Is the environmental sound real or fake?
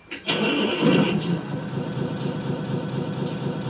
real